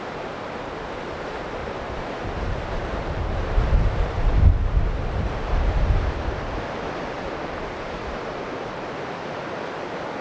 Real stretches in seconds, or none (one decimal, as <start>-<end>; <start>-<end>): 0.0-1.6; 6.6-10.2